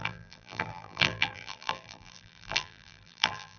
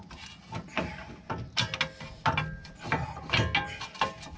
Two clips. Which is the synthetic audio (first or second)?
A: first